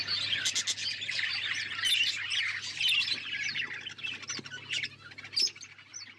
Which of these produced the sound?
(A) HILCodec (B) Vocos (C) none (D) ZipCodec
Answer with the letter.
C